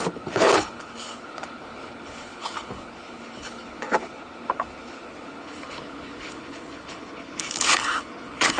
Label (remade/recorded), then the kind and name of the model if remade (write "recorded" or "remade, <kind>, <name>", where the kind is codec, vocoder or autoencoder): remade, codec, HILCodec